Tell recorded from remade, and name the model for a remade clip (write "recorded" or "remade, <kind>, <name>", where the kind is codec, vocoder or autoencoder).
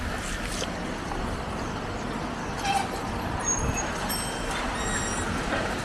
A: recorded